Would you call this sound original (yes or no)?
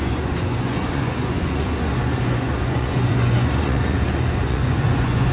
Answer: no